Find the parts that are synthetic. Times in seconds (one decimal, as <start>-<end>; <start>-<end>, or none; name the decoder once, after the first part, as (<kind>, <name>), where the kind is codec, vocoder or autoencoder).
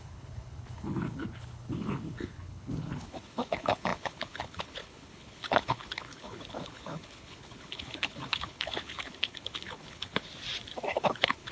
0.0-10.3 (codec, HILCodec); 10.9-11.5